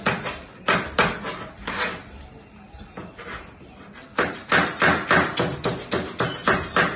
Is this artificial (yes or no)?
no